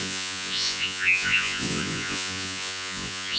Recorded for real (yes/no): no